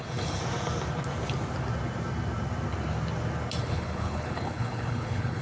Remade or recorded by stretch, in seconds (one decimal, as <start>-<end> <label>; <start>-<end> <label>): 0.0-0.4 remade; 0.4-3.6 recorded; 3.6-5.4 remade